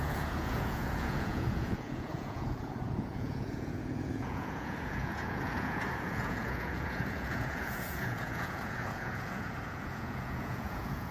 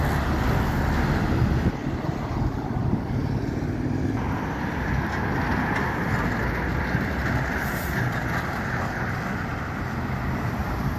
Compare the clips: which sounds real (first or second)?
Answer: second